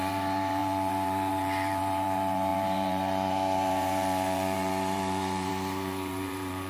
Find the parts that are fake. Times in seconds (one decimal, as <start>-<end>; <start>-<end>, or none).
0.0-6.7